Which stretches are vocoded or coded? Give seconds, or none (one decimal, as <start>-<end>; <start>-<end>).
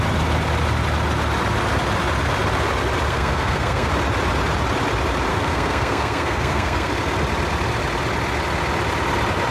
3.1-3.9; 5.3-6.9